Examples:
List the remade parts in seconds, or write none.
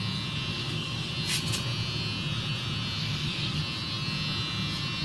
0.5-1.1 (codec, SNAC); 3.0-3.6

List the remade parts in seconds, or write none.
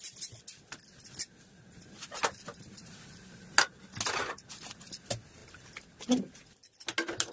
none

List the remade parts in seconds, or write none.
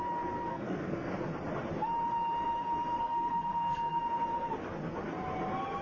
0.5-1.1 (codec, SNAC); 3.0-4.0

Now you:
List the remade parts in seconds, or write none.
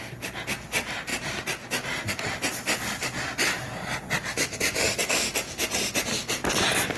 none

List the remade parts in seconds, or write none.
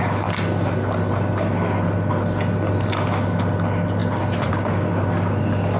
none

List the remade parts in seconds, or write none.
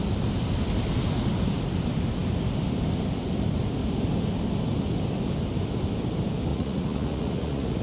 6.5-7.8 (vocoder, Vocos)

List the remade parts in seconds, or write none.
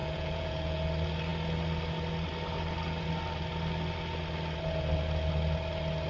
0.0-0.9 (vocoder, Vocos)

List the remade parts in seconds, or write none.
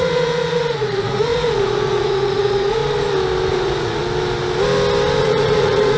0.0-2.8 (vocoder, Vocos); 3.5-4.0; 5.2-6.0